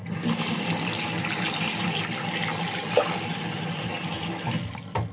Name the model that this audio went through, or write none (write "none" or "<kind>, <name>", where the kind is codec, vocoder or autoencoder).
none